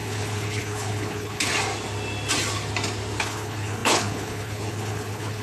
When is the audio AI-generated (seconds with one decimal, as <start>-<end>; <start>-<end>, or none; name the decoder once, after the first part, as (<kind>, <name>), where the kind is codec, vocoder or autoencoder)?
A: 0.0-1.5 (codec, HILCodec); 3.2-5.4